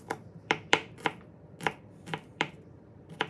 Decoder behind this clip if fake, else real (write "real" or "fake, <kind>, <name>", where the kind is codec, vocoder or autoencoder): fake, vocoder, BigVGAN v2